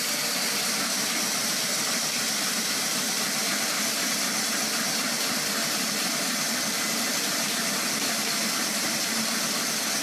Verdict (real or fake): real